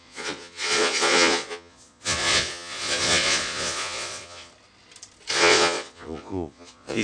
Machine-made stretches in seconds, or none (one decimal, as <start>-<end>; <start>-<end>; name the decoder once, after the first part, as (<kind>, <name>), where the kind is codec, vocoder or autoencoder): 0.0-4.5 (vocoder, Vocos); 5.3-7.0